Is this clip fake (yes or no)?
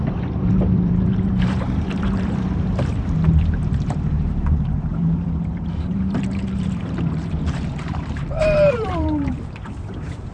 yes